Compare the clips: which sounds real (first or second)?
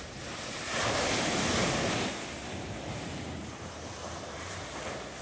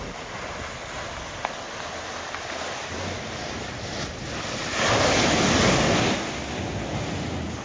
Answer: second